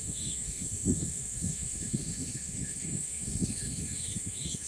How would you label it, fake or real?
fake